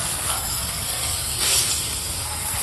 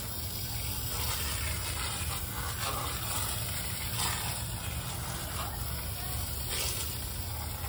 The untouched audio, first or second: second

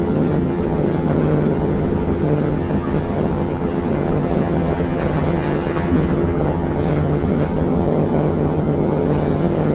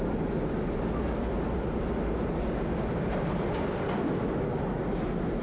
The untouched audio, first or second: second